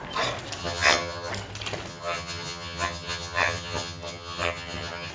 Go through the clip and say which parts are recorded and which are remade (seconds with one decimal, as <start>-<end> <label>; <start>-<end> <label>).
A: 0.0-0.6 recorded; 0.6-1.3 remade; 1.3-1.9 recorded; 1.9-5.1 remade